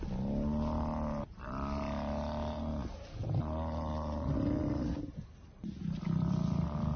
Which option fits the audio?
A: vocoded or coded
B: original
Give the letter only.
B